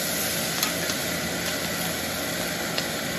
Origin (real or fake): real